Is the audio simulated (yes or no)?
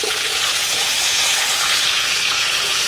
yes